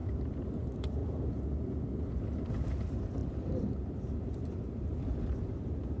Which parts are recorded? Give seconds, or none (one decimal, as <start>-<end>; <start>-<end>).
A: 1.0-2.1